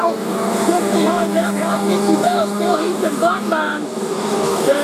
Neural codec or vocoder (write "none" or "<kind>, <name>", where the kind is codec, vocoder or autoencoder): codec, DAC